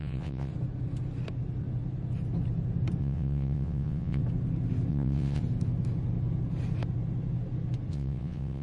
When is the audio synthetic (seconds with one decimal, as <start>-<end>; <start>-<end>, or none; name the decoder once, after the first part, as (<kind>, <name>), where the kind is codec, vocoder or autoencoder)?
0.0-0.5 (vocoder, WaveNeXt); 3.0-4.2; 4.9-5.4; 7.9-8.6